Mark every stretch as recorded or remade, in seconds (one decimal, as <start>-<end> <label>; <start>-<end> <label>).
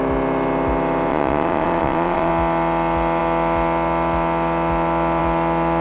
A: 0.0-1.1 recorded; 1.1-2.3 remade; 2.3-5.8 recorded